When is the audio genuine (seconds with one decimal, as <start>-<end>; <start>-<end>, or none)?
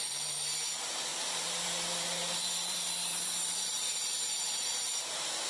none